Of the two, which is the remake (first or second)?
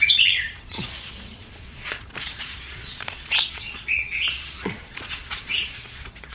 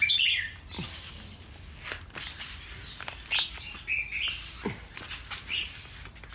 first